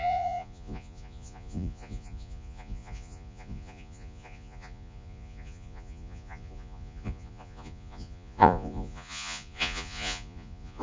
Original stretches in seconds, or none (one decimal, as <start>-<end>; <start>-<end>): none